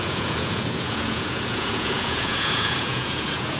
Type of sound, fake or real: fake